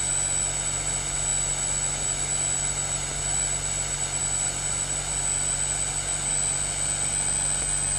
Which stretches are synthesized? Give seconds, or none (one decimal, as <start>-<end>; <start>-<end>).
none